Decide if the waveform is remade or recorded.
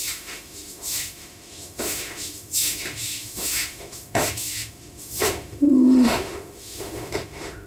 remade